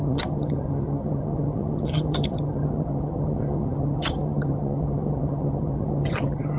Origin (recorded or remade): remade